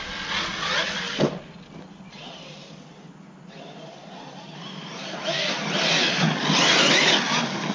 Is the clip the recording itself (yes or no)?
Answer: yes